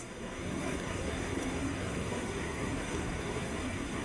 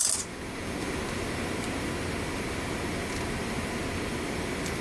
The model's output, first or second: first